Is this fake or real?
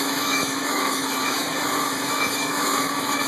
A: fake